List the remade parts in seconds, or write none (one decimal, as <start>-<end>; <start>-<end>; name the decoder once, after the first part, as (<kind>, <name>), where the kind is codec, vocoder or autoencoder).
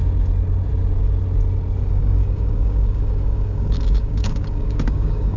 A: 1.9-5.4 (codec, DAC)